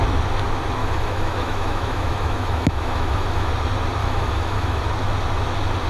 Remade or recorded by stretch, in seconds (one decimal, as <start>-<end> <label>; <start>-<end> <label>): 0.0-0.8 recorded; 0.8-3.5 remade; 3.5-4.0 recorded; 4.0-4.8 remade; 4.8-5.9 recorded